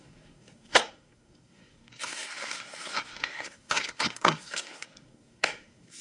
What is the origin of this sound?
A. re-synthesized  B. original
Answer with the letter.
A